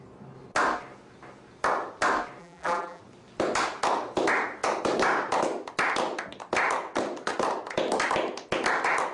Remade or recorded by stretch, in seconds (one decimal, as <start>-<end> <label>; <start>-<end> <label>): 0.0-2.4 recorded; 2.4-3.0 remade; 3.0-9.1 recorded